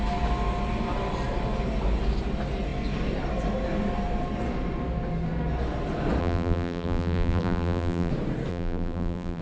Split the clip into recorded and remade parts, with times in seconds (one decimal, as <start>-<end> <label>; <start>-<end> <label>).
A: 0.0-6.2 recorded; 6.2-8.1 remade; 8.1-8.5 recorded; 8.5-9.4 remade